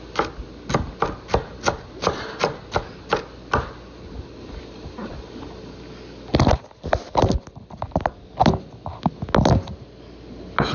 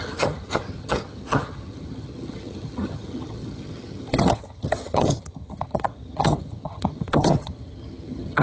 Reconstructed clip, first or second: second